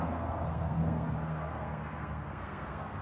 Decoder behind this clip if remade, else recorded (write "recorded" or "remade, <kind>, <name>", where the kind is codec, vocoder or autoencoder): remade, codec, SNAC